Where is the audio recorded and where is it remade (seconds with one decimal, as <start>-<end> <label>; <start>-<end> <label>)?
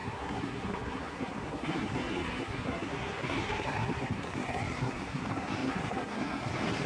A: 0.0-6.9 remade